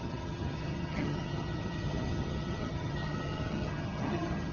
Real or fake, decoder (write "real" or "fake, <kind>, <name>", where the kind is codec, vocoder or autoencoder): fake, vocoder, HiFi-GAN